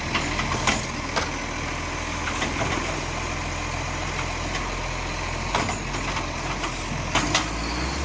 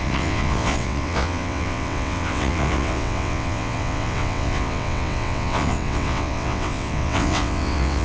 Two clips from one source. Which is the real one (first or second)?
first